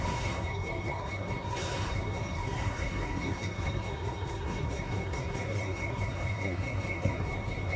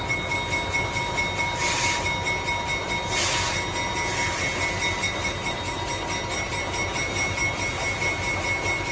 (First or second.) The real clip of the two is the second